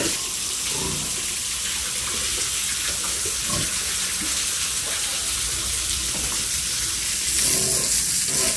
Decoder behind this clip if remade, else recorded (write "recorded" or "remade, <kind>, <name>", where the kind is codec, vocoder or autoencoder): recorded